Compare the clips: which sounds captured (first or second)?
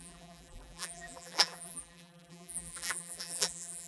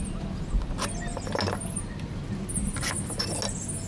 second